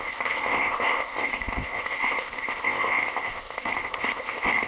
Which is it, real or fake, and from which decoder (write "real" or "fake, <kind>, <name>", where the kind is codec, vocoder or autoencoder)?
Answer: fake, codec, ZipCodec